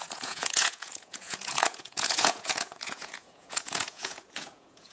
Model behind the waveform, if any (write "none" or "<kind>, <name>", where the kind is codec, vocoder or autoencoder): vocoder, Vocos